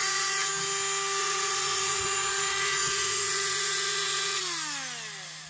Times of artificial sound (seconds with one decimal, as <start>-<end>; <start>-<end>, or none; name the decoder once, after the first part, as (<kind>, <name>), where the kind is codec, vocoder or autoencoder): 0.0-0.5 (vocoder, Vocos); 1.2-4.4